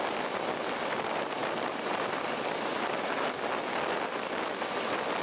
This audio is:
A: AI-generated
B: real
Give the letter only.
B